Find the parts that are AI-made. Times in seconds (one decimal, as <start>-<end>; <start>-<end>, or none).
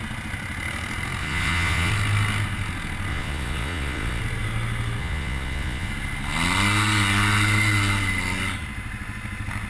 1.2-1.9; 3.1-4.2; 5.0-5.9